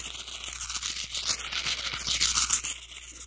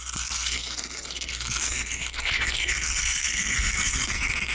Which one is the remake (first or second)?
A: second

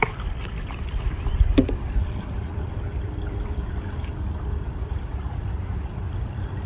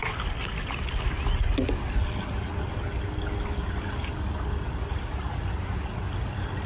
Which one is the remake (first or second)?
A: first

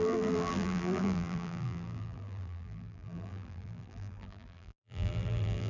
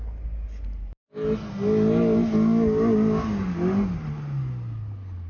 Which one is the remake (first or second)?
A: first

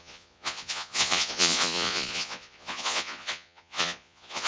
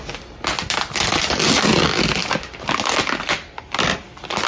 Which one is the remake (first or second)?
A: first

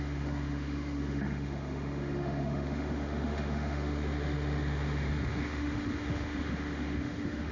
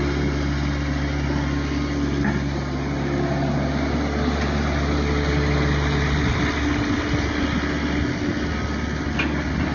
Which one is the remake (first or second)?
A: first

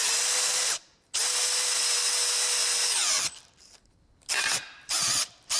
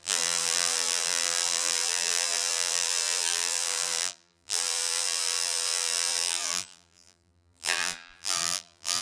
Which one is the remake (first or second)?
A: second